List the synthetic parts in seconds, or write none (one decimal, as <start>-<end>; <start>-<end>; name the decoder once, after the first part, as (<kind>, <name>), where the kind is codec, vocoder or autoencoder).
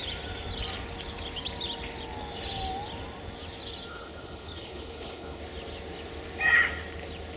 3.9-5.4 (codec, HILCodec)